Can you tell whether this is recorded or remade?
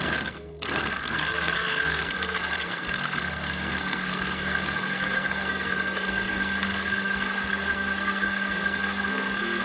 remade